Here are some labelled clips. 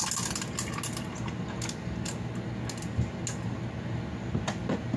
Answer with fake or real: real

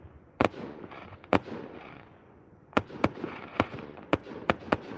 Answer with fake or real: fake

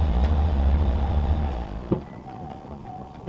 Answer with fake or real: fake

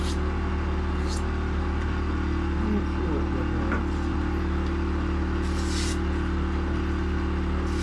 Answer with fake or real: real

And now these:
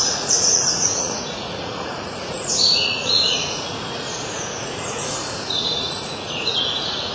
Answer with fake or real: fake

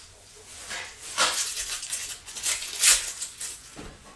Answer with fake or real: fake